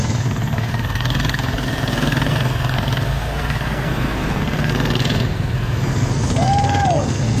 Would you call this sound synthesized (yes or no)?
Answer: yes